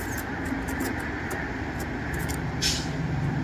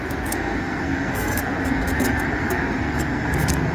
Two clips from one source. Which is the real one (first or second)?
first